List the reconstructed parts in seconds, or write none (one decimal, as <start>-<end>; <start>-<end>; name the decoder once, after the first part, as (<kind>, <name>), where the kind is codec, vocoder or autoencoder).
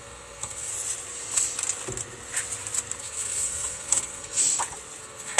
0.0-0.7 (codec, SNAC); 3.0-4.4; 5.0-5.4